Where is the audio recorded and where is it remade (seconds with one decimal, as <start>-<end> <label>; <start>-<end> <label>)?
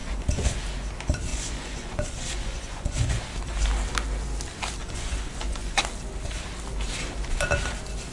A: 0.0-0.6 remade; 0.6-1.3 recorded; 1.3-3.2 remade; 3.2-4.8 recorded; 4.8-5.8 remade; 5.8-8.1 recorded